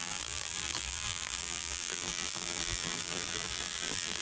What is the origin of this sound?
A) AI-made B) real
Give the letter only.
A